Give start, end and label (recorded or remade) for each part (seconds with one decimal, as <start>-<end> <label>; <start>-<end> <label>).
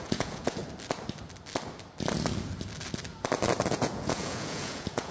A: 0.0-0.6 remade; 0.6-3.7 recorded; 3.7-5.1 remade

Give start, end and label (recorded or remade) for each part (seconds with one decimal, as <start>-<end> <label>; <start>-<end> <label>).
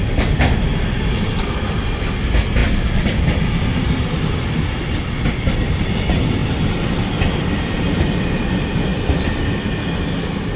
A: 0.0-2.6 recorded; 2.6-3.4 remade; 3.4-6.4 recorded; 6.4-8.3 remade; 8.3-8.9 recorded; 8.9-9.8 remade; 9.8-10.6 recorded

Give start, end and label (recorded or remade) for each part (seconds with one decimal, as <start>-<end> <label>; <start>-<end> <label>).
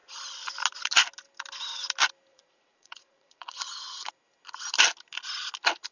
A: 0.0-2.3 recorded; 2.3-4.1 remade; 4.1-5.9 recorded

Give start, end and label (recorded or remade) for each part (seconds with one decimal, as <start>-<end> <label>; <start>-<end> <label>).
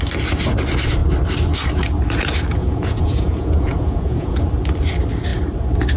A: 0.0-2.6 recorded; 2.6-4.5 remade; 4.5-6.0 recorded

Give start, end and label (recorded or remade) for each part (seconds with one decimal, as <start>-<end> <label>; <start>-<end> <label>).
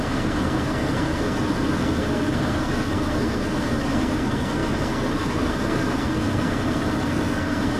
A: 0.0-7.8 remade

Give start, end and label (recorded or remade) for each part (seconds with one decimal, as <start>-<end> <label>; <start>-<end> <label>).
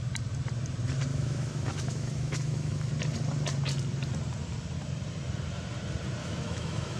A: 0.0-1.1 recorded; 1.1-2.9 remade; 2.9-6.2 recorded; 6.2-7.0 remade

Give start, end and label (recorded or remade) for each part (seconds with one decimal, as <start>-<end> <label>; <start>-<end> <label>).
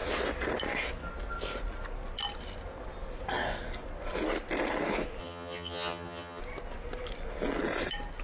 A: 0.0-5.2 recorded; 5.2-6.4 remade; 6.4-8.2 recorded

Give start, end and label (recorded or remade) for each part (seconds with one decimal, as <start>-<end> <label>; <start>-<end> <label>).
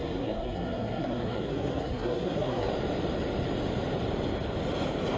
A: 0.0-2.7 remade; 2.7-5.2 recorded